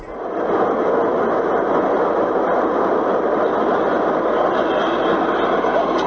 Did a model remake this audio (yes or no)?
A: no